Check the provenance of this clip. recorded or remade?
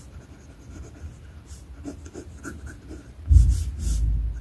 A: recorded